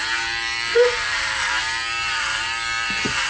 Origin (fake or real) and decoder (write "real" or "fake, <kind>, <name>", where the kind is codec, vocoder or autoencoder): fake, vocoder, BigVGAN v2